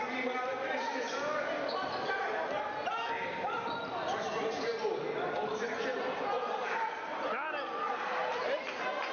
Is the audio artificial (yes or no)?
no